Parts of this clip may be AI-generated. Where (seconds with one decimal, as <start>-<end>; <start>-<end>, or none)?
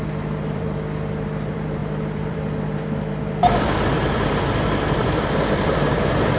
0.0-6.4